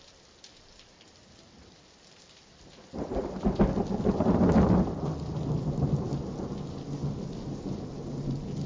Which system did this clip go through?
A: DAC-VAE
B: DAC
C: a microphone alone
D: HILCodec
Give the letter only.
C